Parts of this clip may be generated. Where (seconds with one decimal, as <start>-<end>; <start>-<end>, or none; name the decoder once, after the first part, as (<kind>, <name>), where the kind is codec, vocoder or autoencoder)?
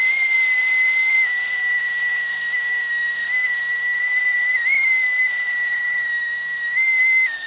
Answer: 1.0-4.0 (autoencoder, DAC-VAE); 6.1-7.5